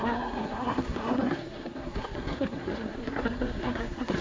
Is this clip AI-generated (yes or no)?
yes